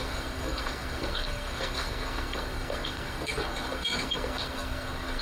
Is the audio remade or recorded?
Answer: remade